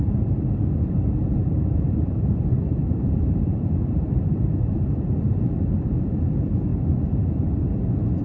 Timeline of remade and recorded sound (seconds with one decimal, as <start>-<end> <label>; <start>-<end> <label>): 0.0-6.7 remade; 6.7-8.2 recorded